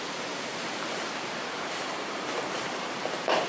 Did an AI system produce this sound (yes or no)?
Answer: yes